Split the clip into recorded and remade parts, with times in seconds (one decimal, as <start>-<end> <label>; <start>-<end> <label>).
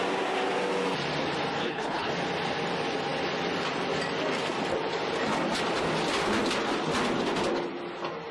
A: 0.0-1.6 recorded; 1.6-2.1 remade; 2.1-8.3 recorded